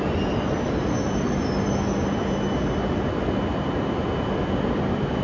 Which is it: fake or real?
real